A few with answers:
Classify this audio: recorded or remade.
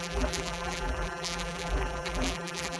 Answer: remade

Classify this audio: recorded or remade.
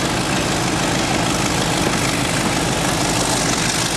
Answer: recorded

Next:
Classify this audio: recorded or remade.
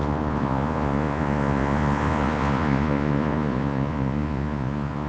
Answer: remade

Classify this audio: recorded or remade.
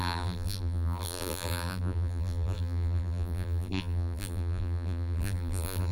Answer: remade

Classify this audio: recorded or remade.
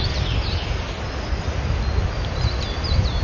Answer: recorded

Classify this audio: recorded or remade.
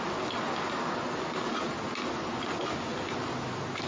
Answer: recorded